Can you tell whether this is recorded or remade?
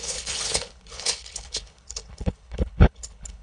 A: remade